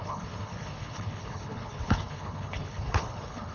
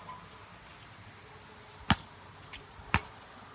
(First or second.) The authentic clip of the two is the second